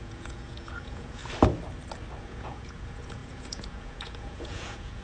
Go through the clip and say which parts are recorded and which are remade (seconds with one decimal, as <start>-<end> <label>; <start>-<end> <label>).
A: 0.0-1.2 remade; 1.2-2.2 recorded; 2.2-5.0 remade